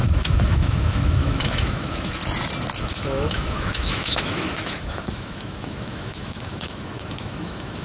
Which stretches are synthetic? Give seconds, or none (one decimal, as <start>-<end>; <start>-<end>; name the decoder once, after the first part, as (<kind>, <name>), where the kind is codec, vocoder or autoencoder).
0.0-2.2 (autoencoder, DAC-VAE); 2.8-7.8